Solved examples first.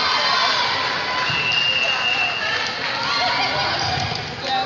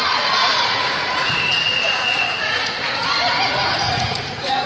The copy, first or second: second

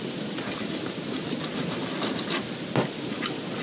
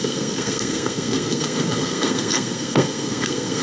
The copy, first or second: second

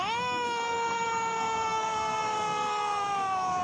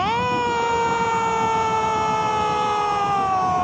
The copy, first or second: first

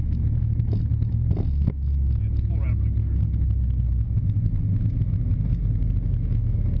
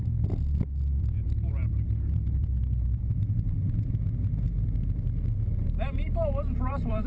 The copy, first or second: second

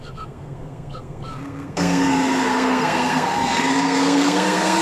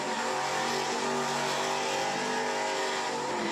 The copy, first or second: first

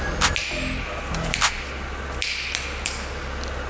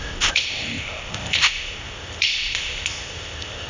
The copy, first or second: second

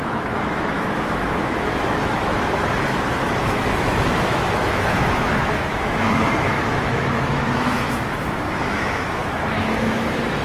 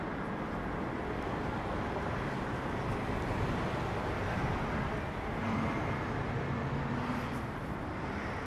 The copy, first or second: first